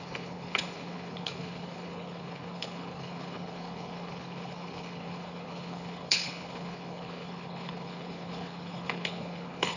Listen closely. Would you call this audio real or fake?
fake